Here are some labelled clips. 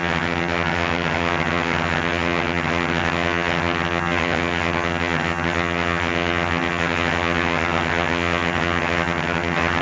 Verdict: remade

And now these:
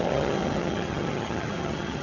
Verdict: remade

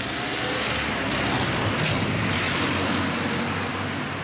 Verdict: recorded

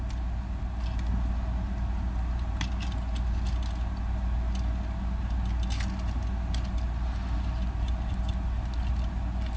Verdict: recorded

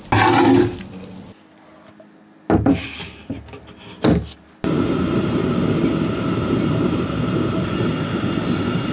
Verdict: recorded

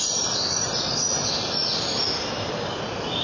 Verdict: recorded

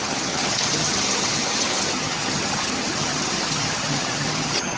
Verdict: remade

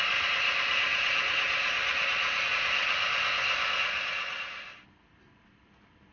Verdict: recorded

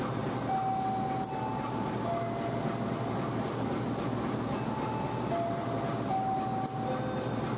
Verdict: recorded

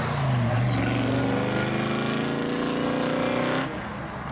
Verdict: recorded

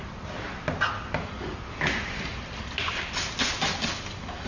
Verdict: recorded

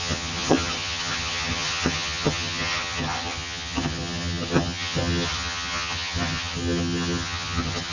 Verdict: remade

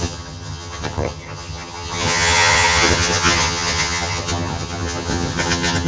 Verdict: remade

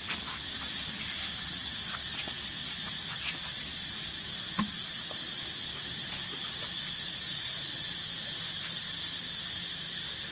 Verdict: recorded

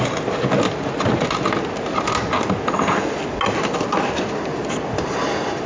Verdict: recorded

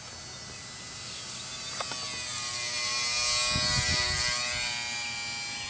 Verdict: recorded